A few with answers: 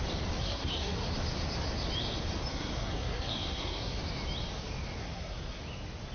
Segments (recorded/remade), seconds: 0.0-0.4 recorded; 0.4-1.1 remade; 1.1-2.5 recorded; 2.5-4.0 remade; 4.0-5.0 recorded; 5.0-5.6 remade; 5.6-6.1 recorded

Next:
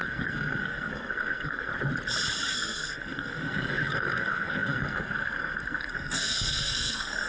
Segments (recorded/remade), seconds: 0.0-1.7 remade; 1.7-2.5 recorded; 2.5-7.3 remade

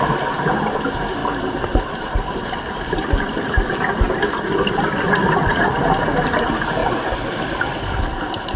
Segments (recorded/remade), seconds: 0.0-1.2 recorded; 1.2-3.4 remade; 3.4-6.8 recorded; 6.8-8.0 remade; 8.0-8.6 recorded

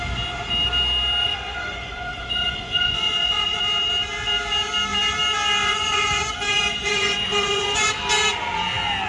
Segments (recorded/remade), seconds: 0.0-1.2 recorded; 1.2-3.6 remade; 3.6-5.6 recorded; 5.6-7.9 remade; 7.9-9.1 recorded

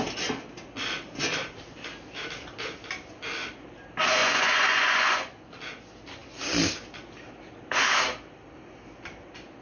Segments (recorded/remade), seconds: 0.0-4.2 recorded; 4.2-5.5 remade; 5.5-9.6 recorded

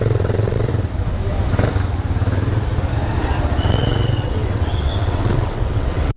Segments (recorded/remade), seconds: 0.0-0.7 remade; 0.7-3.7 recorded; 3.7-6.2 remade

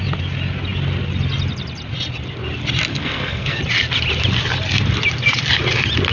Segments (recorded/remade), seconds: 0.0-2.9 recorded; 2.9-3.6 remade; 3.6-6.1 recorded

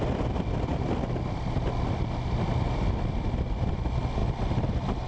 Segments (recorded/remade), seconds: 0.0-5.1 recorded